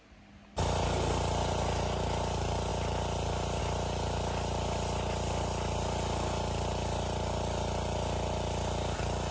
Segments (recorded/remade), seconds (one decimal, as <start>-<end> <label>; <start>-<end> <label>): 0.0-9.3 recorded